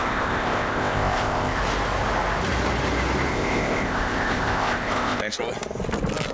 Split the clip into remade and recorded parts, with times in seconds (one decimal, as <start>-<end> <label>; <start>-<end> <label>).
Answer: 0.0-1.6 remade; 1.6-3.3 recorded; 3.3-5.4 remade; 5.4-6.3 recorded

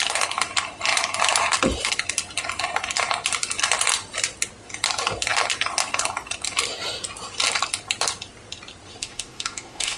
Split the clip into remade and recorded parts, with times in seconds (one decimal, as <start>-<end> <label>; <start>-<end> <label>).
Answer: 0.0-9.0 recorded; 9.0-10.0 remade

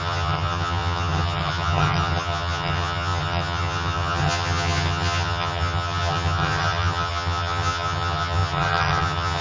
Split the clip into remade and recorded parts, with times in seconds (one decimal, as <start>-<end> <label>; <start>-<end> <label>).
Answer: 0.0-9.4 remade

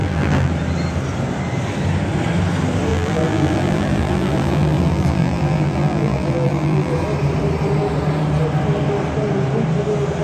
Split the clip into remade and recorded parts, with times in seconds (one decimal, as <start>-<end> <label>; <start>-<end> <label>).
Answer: 0.0-0.5 remade; 0.5-2.9 recorded; 2.9-6.9 remade; 6.9-10.2 recorded

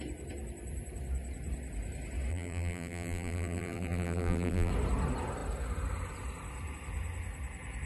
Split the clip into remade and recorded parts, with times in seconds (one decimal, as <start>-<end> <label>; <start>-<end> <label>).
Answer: 0.0-2.3 recorded; 2.3-4.7 remade; 4.7-7.9 recorded

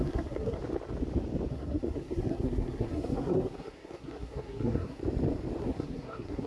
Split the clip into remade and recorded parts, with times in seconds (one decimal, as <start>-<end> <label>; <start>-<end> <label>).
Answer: 0.0-0.6 remade; 0.6-1.5 recorded; 1.5-5.0 remade; 5.0-5.6 recorded; 5.6-6.5 remade

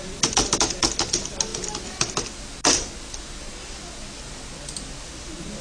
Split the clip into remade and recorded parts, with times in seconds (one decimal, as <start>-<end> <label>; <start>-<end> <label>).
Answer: 0.0-5.6 recorded

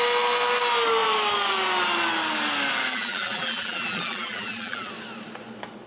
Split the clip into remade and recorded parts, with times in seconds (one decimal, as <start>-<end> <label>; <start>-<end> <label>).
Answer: 0.0-2.9 recorded; 2.9-4.9 remade; 4.9-5.9 recorded